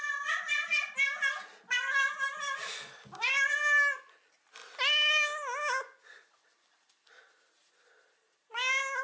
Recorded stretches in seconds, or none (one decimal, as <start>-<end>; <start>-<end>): 0.0-9.0